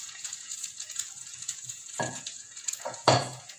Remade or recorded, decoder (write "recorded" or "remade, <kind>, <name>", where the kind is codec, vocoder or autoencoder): remade, vocoder, Vocos